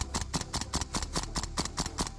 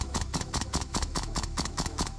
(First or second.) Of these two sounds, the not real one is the second